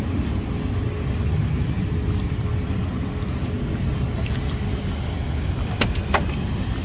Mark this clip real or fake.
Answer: real